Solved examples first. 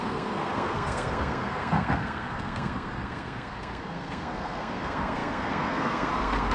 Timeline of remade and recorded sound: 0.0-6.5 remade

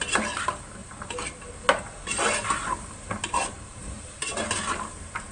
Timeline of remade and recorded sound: 0.0-3.4 recorded; 3.4-4.2 remade; 4.2-5.3 recorded

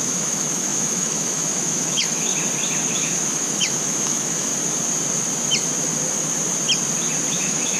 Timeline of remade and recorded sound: 0.0-2.3 remade; 2.3-2.9 recorded; 2.9-4.5 remade; 4.5-7.3 recorded; 7.3-7.8 remade

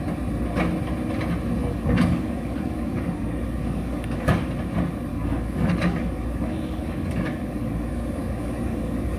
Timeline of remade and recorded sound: 0.0-1.6 recorded; 1.6-4.3 remade; 4.3-5.1 recorded; 5.1-9.2 remade